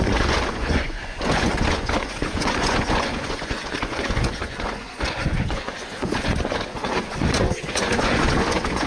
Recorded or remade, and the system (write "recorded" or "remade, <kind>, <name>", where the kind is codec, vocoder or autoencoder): remade, vocoder, Vocos